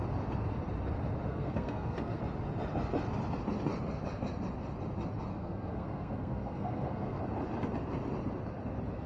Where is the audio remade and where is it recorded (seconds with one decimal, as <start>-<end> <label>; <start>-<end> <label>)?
0.0-1.3 recorded; 1.3-2.2 remade; 2.2-5.3 recorded; 5.3-7.2 remade; 7.2-9.1 recorded